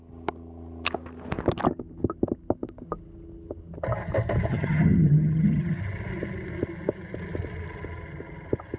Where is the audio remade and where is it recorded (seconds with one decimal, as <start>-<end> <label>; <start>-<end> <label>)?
0.0-4.5 recorded; 4.5-5.8 remade; 5.8-8.8 recorded